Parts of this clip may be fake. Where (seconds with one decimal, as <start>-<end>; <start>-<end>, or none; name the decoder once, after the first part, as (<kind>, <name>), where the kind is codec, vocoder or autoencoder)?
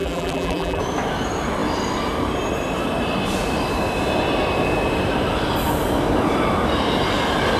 0.0-0.8 (vocoder, BigVGAN v2)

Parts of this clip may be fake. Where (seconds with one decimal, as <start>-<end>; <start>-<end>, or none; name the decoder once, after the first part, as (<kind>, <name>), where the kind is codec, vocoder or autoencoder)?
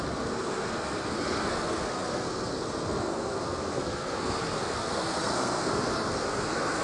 0.0-6.8 (codec, SNAC)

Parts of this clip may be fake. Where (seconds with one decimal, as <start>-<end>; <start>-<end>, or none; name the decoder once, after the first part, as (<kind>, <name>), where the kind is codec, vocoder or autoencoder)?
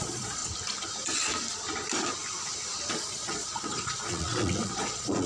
0.0-0.4 (vocoder, Vocos); 2.9-5.3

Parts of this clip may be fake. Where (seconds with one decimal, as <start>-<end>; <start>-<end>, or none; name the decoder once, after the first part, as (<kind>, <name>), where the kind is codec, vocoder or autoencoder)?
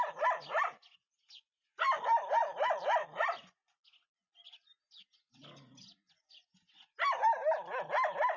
none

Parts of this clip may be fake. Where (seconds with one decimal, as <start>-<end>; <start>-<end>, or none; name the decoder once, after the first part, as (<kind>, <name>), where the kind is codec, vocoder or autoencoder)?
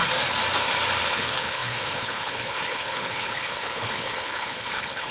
1.1-5.1 (codec, HILCodec)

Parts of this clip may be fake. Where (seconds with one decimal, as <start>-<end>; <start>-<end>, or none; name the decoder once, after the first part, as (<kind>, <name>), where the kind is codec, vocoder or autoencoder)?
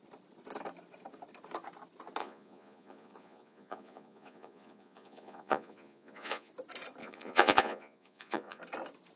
2.2-6.5 (vocoder, Vocos); 7.0-8.6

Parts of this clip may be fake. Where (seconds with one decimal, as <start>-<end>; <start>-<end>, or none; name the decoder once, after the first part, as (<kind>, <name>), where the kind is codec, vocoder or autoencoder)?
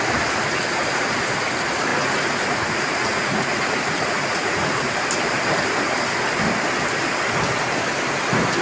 1.9-4.9 (vocoder, Vocos)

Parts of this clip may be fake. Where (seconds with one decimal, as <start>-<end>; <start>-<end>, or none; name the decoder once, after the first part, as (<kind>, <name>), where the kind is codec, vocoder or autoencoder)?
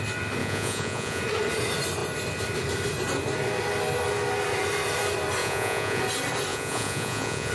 0.4-1.2 (vocoder, Vocos); 5.4-6.0; 6.5-7.5